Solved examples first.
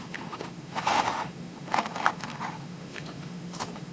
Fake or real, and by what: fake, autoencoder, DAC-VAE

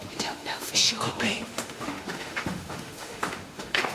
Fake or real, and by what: fake, autoencoder, DAC-VAE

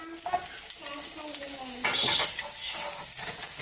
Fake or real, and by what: real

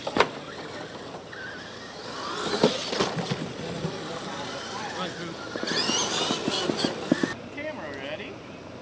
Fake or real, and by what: real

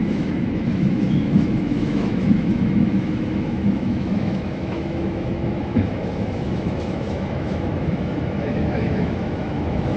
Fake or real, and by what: fake, autoencoder, DAC-VAE